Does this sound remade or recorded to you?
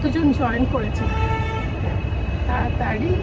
remade